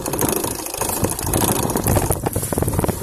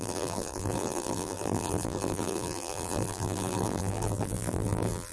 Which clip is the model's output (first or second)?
second